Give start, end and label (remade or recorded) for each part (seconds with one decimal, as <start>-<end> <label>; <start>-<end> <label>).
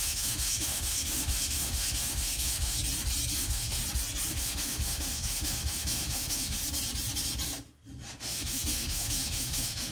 0.0-2.8 remade; 2.8-3.3 recorded; 3.3-3.8 remade; 3.8-4.3 recorded; 4.3-6.6 remade; 6.6-8.1 recorded; 8.1-9.9 remade